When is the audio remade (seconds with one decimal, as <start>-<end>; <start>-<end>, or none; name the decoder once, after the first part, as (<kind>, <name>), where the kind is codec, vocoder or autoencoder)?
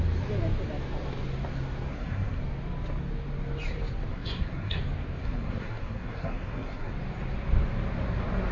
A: 1.9-2.4 (codec, SNAC); 4.1-4.8; 5.2-6.9